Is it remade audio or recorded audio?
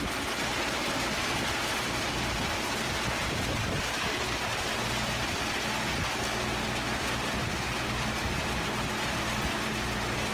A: recorded